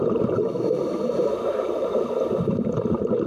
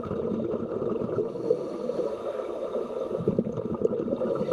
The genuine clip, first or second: second